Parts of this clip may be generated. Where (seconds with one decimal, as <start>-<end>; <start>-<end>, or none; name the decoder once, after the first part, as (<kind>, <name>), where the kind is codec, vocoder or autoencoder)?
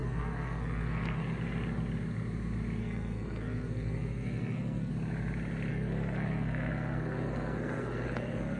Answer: 0.0-1.2 (codec, SNAC); 2.8-4.9; 5.7-8.6